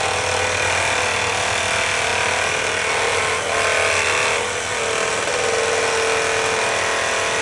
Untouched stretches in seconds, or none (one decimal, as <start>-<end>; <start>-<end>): 0.0-7.4